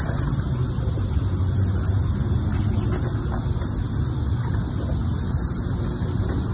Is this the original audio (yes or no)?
yes